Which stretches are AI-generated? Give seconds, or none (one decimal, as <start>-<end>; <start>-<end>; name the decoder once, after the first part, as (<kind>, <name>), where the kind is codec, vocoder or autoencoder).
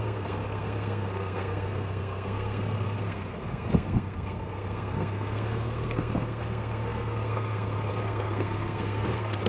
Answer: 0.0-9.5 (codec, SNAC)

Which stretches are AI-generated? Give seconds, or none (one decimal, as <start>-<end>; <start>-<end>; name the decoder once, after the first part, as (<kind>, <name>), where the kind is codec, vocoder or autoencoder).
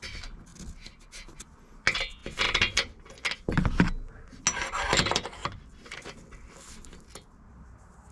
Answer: none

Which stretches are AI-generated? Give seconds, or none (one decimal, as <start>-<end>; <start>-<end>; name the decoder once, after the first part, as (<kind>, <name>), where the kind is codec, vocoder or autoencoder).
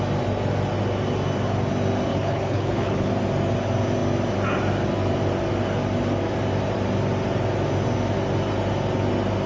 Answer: 2.1-3.1 (codec, HILCodec)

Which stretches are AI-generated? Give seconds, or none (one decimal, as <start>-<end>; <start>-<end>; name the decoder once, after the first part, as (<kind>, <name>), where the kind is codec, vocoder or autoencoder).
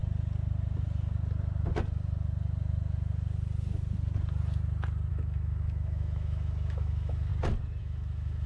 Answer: 5.1-7.3 (autoencoder, DAC-VAE); 7.8-8.5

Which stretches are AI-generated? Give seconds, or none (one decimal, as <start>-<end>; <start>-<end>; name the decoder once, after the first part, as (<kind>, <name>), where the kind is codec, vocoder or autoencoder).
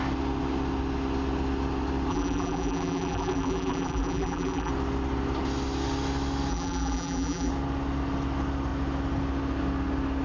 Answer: 2.1-4.7 (vocoder, BigVGAN v2); 6.5-7.5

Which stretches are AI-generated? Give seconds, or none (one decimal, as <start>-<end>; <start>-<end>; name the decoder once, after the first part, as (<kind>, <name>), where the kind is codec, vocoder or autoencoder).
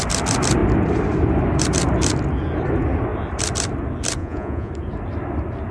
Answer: 4.2-4.7 (vocoder, Vocos)